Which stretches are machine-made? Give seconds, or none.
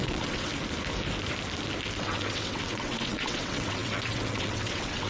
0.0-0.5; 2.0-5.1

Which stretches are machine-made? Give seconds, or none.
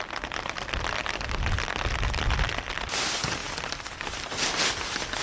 none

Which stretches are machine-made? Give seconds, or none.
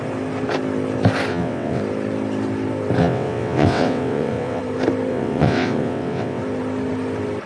1.3-1.8; 3.0-4.6; 5.1-6.4